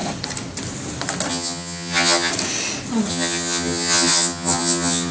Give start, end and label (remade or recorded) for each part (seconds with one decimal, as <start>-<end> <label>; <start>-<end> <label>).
0.0-1.3 recorded; 1.3-2.3 remade; 2.3-3.1 recorded; 3.1-5.1 remade